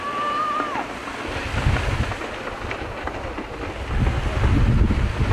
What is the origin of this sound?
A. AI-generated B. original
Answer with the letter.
B